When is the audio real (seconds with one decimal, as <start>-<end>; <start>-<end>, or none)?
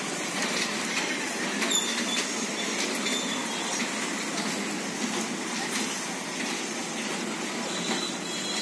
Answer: 0.0-8.6